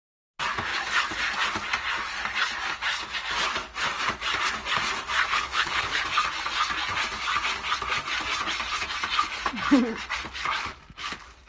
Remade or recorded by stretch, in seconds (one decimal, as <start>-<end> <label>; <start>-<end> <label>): 0.0-5.3 recorded; 5.3-6.0 remade; 6.0-11.5 recorded